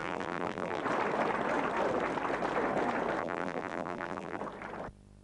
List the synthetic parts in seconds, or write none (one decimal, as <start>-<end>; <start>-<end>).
0.0-0.8; 3.2-4.4